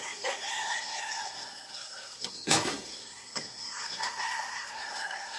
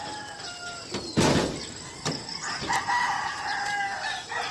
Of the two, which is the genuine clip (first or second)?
second